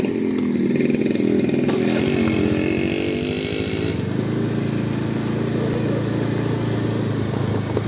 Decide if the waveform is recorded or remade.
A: recorded